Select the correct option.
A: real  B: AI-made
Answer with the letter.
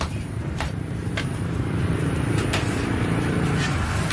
B